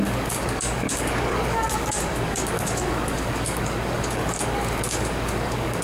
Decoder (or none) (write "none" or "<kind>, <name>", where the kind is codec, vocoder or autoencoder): codec, DAC